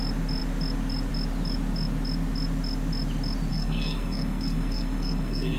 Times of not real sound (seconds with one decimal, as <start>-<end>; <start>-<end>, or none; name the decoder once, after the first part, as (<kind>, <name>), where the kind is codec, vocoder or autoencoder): 3.5-5.6 (codec, SNAC)